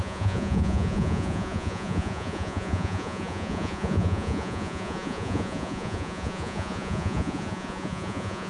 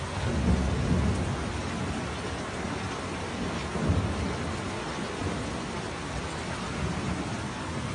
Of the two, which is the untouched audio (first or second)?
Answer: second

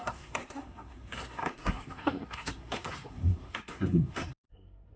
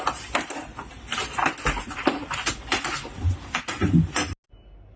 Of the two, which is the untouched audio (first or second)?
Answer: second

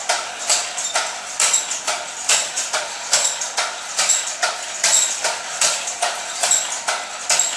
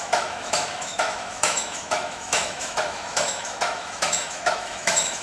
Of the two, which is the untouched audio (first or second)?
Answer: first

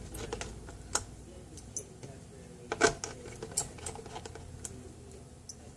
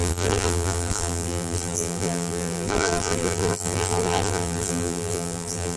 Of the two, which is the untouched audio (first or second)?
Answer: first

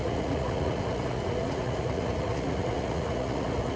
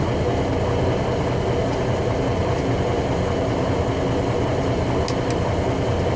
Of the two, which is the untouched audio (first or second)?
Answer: second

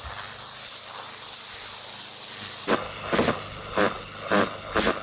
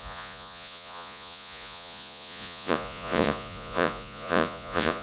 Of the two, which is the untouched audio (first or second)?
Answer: first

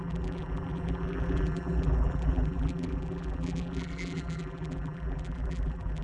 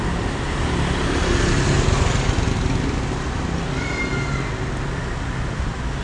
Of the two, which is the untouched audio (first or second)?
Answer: second